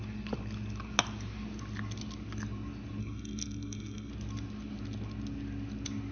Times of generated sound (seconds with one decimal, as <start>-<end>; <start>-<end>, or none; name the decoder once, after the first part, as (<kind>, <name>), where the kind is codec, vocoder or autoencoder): 3.0-4.1 (codec, SNAC)